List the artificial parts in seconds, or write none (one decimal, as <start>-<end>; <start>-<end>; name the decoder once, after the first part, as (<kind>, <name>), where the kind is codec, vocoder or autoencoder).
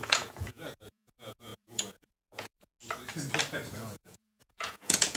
0.0-2.7 (vocoder, Vocos); 3.7-5.2